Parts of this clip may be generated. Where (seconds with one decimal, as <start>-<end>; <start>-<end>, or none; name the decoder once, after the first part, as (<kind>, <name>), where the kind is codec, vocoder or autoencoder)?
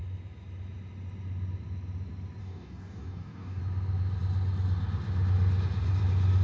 2.4-3.6 (codec, DAC)